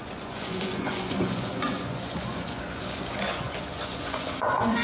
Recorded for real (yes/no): no